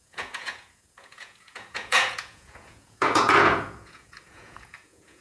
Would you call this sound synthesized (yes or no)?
yes